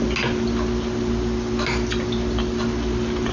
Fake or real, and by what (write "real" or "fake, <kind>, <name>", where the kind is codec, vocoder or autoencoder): real